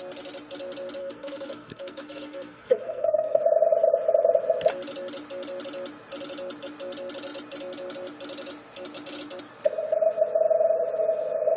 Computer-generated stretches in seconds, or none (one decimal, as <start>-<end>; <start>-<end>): 1.0-3.4